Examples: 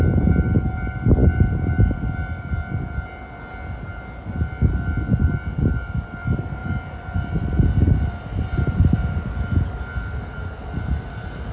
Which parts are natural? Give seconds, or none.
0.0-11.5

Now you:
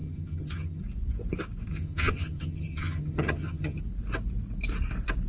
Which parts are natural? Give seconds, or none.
0.8-1.7; 3.8-5.3

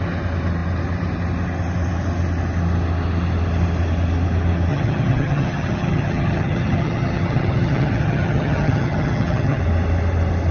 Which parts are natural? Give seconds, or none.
0.0-4.7; 9.6-10.5